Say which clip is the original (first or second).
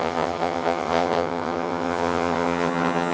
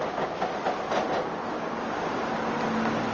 second